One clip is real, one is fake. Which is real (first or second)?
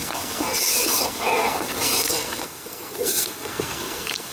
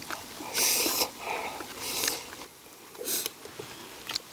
second